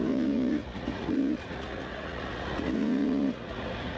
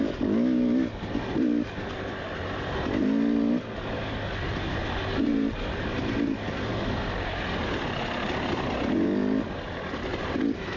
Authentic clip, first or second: second